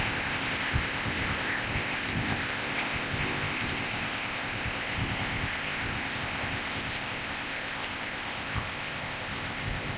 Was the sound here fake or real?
fake